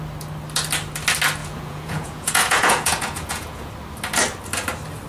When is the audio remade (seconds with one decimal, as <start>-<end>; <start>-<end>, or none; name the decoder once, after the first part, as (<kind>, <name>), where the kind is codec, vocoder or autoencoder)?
1.4-3.7 (vocoder, Vocos)